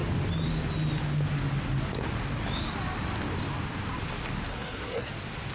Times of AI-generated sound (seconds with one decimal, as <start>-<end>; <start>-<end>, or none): 4.5-5.1